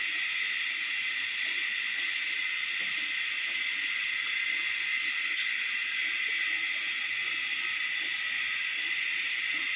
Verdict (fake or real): real